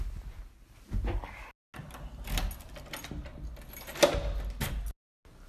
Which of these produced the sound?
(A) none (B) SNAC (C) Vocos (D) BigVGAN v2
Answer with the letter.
A